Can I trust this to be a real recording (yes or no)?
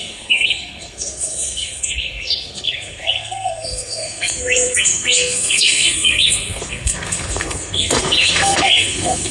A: no